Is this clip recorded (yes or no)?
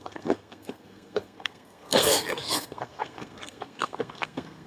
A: no